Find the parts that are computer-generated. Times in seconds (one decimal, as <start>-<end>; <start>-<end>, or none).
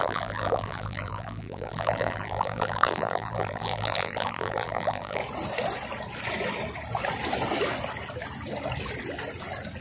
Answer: 0.0-5.2